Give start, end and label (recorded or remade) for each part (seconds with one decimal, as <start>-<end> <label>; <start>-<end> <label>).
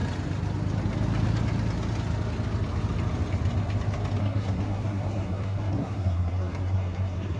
0.0-4.2 recorded; 4.2-7.4 remade